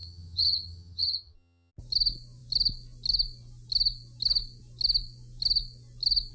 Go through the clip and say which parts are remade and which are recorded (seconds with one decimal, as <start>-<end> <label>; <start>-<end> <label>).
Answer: 0.0-1.7 remade; 1.7-6.3 recorded